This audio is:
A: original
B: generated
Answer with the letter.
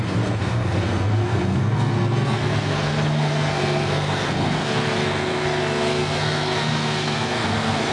B